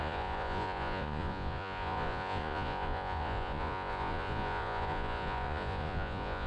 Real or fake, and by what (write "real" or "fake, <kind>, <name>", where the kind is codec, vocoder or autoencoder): fake, vocoder, Vocos